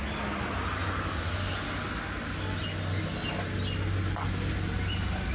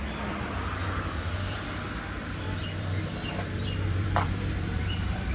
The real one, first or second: first